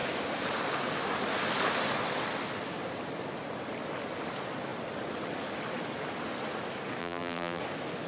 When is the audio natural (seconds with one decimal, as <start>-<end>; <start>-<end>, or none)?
0.0-7.0; 7.6-8.1